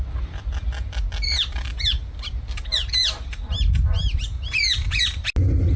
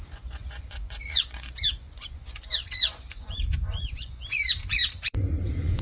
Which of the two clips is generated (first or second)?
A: second